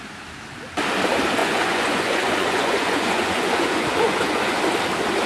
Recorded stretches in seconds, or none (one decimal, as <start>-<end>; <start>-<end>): 0.0-1.4; 4.6-5.3